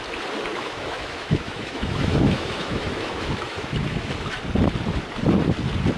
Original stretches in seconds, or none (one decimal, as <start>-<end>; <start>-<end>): 0.0-0.5; 4.1-6.0